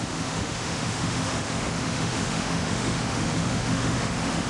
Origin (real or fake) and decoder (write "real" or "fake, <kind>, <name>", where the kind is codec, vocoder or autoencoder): fake, autoencoder, DAC-VAE